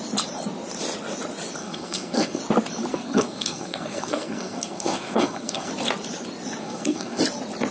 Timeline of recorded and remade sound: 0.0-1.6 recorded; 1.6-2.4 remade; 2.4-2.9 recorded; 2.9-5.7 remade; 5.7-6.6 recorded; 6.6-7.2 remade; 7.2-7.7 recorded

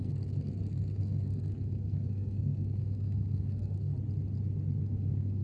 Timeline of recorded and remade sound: 0.0-3.9 remade; 3.9-4.8 recorded; 4.8-5.4 remade